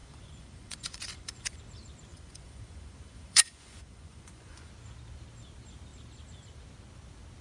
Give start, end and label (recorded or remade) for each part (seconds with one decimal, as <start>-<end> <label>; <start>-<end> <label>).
0.0-1.6 remade; 1.6-2.1 recorded; 2.1-4.7 remade; 4.7-7.4 recorded